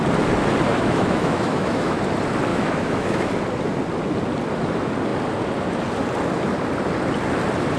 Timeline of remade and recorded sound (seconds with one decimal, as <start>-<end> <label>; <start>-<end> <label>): 0.0-0.7 recorded; 0.7-2.0 remade; 2.0-2.5 recorded; 2.5-3.3 remade; 3.3-7.8 recorded